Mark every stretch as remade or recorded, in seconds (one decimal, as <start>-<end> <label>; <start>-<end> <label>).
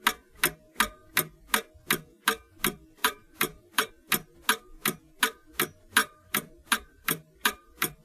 0.0-3.0 recorded; 3.0-3.9 remade; 3.9-6.0 recorded; 6.0-8.0 remade